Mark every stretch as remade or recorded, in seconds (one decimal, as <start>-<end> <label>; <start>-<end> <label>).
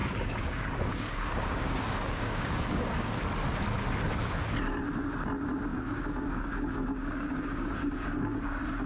0.0-3.2 remade; 3.2-5.7 recorded; 5.7-8.9 remade